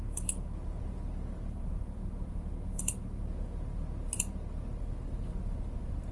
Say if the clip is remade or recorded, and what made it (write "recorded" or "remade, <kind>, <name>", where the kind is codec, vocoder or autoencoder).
recorded